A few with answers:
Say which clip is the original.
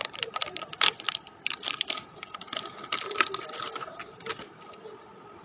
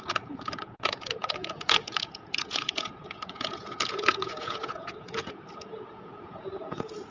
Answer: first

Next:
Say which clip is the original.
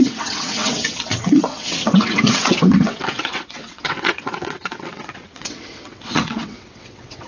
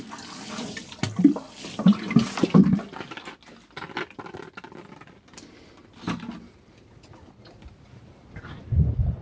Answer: second